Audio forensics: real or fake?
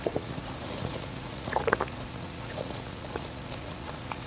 fake